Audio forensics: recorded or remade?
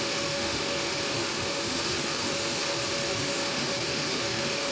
remade